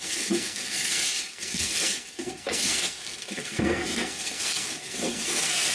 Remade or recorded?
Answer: remade